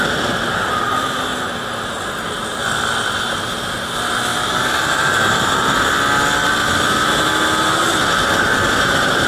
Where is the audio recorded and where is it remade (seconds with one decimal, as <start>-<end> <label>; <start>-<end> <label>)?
0.0-4.3 recorded; 4.3-5.9 remade; 5.9-9.3 recorded